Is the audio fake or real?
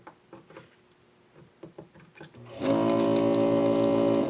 real